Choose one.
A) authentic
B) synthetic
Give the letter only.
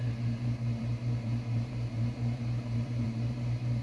B